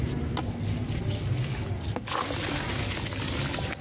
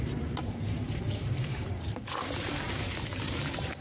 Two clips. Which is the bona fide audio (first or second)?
first